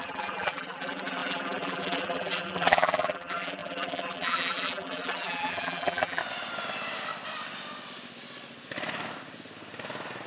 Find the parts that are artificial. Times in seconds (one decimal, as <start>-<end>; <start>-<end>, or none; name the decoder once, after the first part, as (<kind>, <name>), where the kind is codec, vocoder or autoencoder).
0.0-6.2 (vocoder, BigVGAN v2)